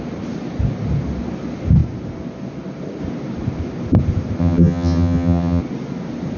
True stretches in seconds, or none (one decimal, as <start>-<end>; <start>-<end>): 0.0-4.4; 5.6-6.4